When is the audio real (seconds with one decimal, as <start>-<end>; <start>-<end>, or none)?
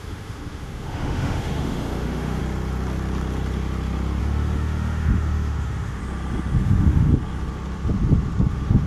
2.4-4.2; 6.0-6.6; 7.1-8.5